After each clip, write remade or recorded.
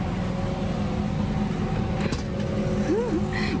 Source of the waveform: recorded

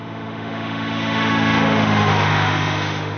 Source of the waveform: remade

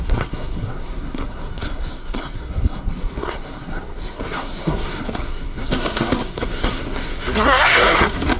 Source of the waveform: remade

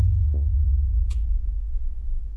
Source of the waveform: remade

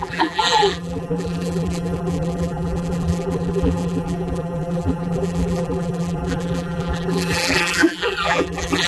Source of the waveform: remade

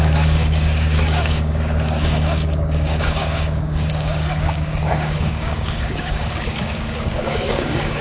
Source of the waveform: remade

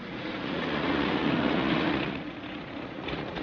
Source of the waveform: remade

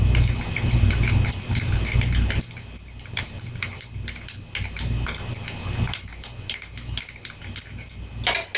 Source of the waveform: recorded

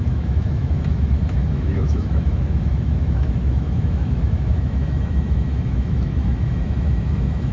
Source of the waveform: remade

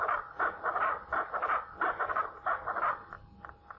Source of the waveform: recorded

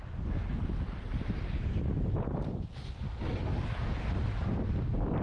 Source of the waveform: recorded